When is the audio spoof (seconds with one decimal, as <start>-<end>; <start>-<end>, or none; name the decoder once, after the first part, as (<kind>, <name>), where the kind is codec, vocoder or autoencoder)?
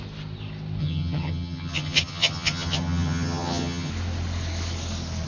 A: 0.8-3.9 (vocoder, HiFi-GAN)